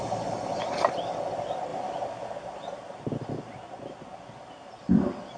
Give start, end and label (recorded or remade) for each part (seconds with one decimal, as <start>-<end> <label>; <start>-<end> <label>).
0.0-5.4 recorded